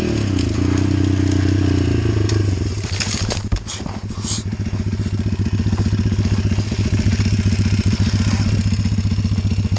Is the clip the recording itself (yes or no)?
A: yes